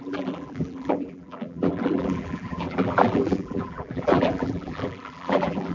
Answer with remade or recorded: remade